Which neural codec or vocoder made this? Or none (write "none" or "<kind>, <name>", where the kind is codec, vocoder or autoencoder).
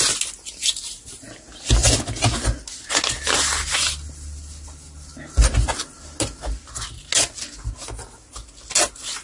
none